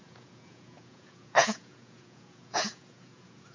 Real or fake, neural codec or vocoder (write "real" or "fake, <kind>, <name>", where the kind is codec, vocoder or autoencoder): fake, vocoder, Vocos